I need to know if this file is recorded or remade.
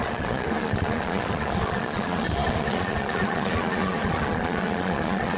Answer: remade